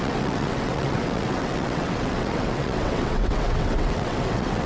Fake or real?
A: fake